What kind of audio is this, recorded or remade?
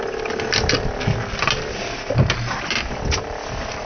recorded